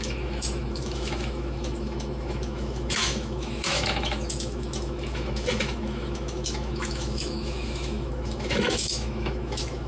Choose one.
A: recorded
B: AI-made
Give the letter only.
B